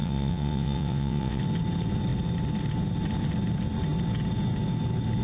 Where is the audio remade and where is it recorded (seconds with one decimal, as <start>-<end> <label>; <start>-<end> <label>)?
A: 0.0-1.4 remade; 1.4-5.2 recorded